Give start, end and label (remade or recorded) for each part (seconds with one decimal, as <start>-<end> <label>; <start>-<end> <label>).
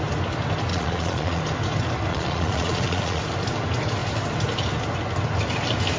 0.0-0.7 recorded; 0.7-1.4 remade; 1.4-2.1 recorded; 2.1-3.2 remade; 3.2-6.0 recorded